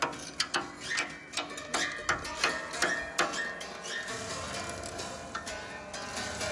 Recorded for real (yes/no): yes